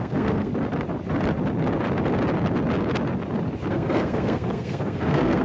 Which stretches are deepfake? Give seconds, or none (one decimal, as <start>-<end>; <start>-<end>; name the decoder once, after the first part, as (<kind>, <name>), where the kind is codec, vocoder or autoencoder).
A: 0.0-0.5 (codec, SNAC); 3.7-5.4